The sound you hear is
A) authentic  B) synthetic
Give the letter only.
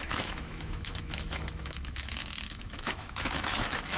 B